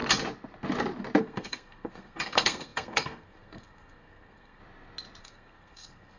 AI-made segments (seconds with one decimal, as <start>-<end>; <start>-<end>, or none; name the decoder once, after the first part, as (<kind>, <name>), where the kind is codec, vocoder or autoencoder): 1.2-4.6 (codec, SNAC); 5.2-6.2